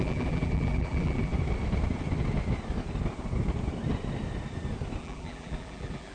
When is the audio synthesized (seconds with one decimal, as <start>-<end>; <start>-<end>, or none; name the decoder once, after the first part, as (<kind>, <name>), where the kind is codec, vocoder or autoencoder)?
0.0-1.3 (vocoder, BigVGAN v2); 5.0-6.1